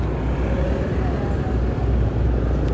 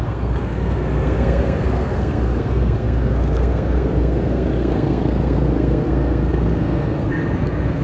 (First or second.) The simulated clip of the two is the second